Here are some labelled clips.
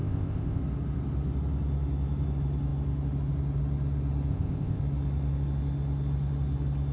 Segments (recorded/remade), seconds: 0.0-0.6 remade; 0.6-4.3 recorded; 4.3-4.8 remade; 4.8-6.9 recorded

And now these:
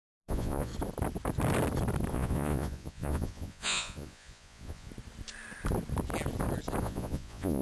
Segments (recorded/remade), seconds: 0.0-0.7 remade; 0.7-2.1 recorded; 2.1-4.9 remade; 4.9-6.8 recorded; 6.8-7.6 remade

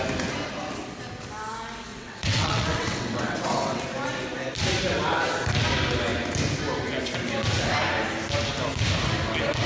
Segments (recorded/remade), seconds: 0.0-1.9 recorded; 1.9-3.8 remade; 3.8-9.7 recorded

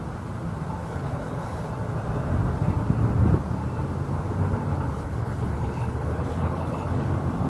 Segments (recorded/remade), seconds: 0.0-0.8 recorded; 0.8-1.7 remade; 1.7-4.7 recorded; 4.7-7.1 remade; 7.1-7.5 recorded

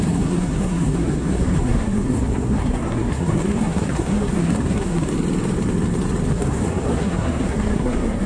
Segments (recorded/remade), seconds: 0.0-5.1 remade; 5.1-6.3 recorded; 6.3-8.3 remade

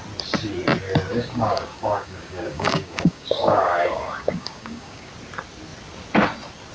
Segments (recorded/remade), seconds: 0.0-1.1 recorded; 1.1-5.1 remade; 5.1-6.7 recorded

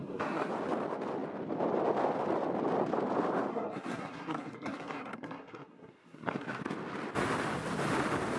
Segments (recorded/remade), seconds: 0.0-0.5 remade; 0.5-3.5 recorded; 3.5-6.6 remade; 6.6-8.4 recorded

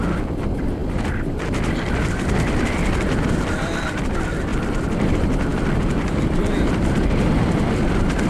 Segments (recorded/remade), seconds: 0.0-4.5 remade; 4.5-5.0 recorded; 5.0-8.3 remade